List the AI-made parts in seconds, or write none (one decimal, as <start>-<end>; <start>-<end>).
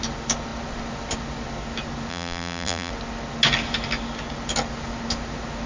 2.1-2.9